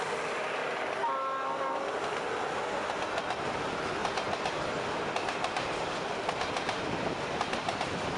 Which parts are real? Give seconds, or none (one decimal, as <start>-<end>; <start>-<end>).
0.0-8.2